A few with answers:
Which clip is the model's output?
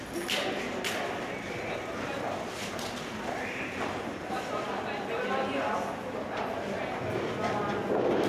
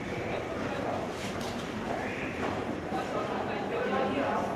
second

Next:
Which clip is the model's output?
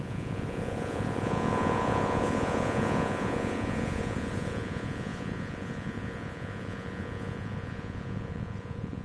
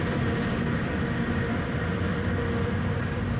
first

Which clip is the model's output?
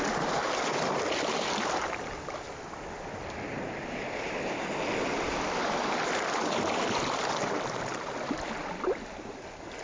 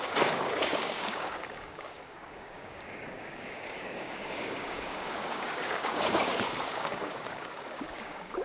second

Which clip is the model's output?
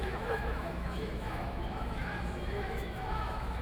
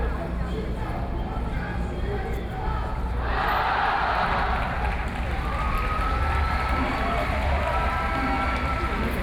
first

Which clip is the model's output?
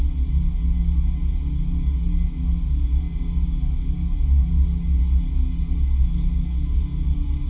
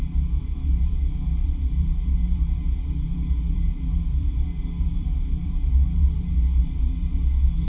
second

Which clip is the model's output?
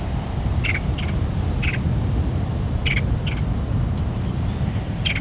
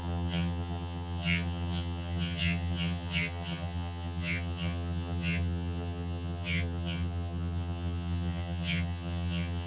second